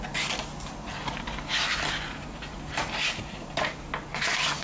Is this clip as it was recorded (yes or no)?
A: yes